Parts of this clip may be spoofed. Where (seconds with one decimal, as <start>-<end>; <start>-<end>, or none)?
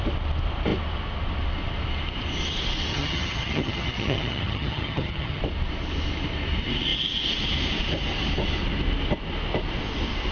2.9-5.4